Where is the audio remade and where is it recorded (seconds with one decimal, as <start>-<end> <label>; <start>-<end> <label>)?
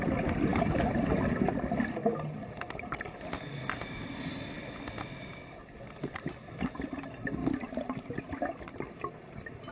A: 0.0-9.7 recorded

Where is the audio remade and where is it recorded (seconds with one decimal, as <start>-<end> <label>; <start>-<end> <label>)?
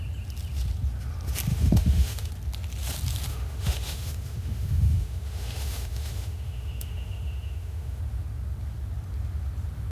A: 0.0-1.5 recorded; 1.5-2.3 remade; 2.3-3.3 recorded; 3.3-8.0 remade; 8.0-9.9 recorded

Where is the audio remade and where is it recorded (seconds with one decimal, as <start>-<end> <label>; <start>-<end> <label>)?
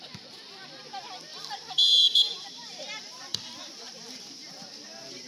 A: 0.0-1.3 recorded; 1.3-4.5 remade; 4.5-5.3 recorded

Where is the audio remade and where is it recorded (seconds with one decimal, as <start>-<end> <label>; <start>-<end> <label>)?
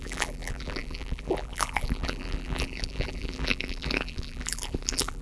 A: 0.0-5.2 remade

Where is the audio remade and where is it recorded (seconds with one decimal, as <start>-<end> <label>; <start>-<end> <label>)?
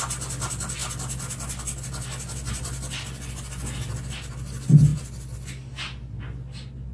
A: 0.0-6.9 recorded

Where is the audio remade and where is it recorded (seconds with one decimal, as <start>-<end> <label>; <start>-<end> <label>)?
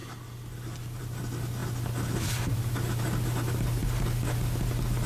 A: 0.0-5.1 recorded